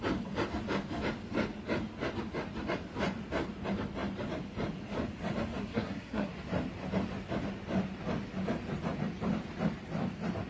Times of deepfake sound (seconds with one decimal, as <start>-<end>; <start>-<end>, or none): 5.6-6.3